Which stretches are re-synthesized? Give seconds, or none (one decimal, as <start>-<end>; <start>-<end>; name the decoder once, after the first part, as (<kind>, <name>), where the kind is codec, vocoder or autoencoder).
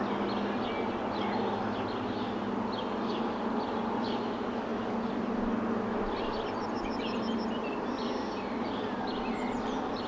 none